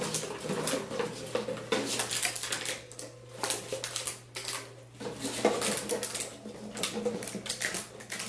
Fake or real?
real